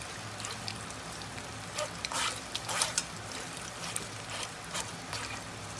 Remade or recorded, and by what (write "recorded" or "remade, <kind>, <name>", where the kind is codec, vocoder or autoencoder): recorded